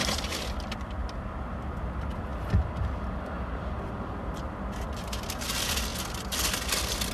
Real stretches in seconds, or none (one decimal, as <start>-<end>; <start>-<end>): 5.9-7.1